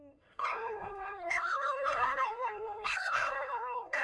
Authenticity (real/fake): fake